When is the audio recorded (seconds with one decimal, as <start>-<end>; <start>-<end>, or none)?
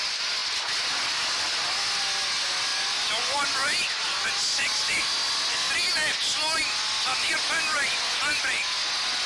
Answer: 0.0-9.3